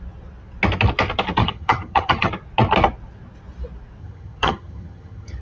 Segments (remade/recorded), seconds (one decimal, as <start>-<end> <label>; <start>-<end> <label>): 0.0-1.4 recorded; 1.4-2.3 remade; 2.3-4.0 recorded; 4.0-5.4 remade